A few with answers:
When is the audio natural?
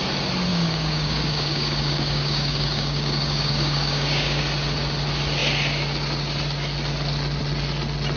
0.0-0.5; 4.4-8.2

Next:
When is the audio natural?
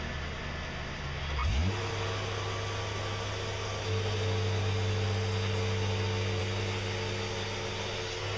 0.0-8.4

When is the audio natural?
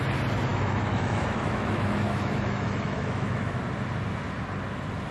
0.0-0.5; 3.6-5.1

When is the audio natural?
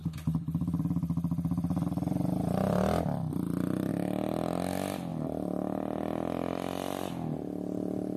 3.9-8.2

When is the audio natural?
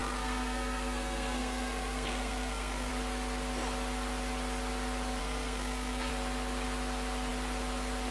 2.9-5.2; 6.1-8.1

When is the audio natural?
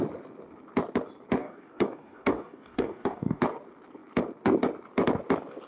0.0-1.4; 3.4-5.7